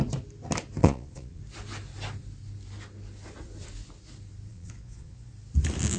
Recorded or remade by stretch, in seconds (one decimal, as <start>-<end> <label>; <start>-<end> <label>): 0.0-0.8 recorded; 0.8-1.4 remade; 1.4-4.5 recorded; 4.5-5.3 remade; 5.3-6.0 recorded